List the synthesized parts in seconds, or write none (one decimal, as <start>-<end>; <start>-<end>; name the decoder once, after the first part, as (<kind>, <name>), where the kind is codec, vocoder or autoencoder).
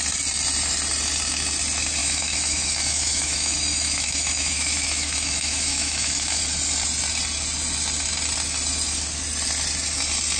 2.0-6.4 (autoencoder, DAC-VAE)